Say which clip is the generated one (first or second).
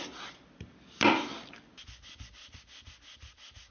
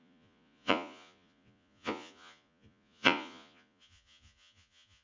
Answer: second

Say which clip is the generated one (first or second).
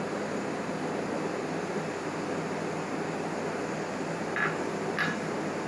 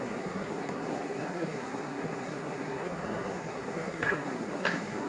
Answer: second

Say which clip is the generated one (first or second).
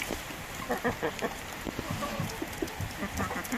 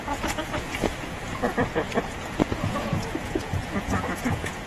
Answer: second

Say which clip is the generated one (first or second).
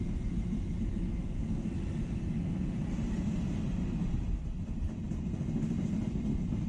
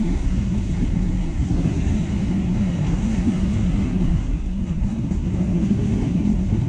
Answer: second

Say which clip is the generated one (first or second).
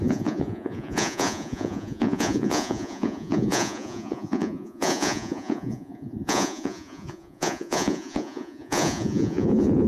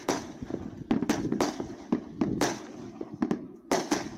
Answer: first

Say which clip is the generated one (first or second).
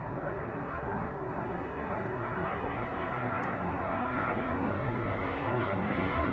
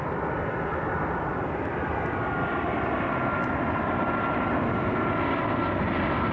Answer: first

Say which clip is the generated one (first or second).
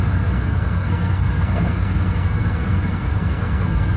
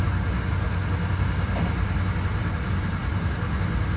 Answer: first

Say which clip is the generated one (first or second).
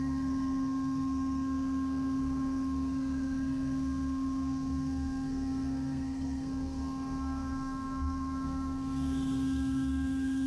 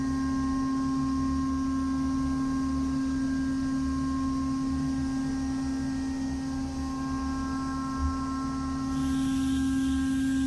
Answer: first